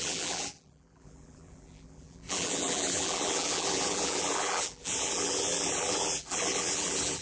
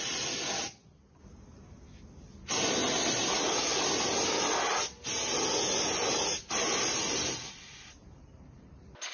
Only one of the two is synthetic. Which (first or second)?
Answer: first